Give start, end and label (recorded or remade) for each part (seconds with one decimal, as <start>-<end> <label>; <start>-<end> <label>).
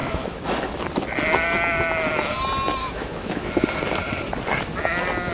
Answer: 0.0-0.8 remade; 0.8-2.8 recorded; 2.8-3.5 remade; 3.5-5.3 recorded